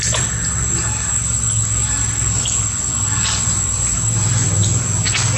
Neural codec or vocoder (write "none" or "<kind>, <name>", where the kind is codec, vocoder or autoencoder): none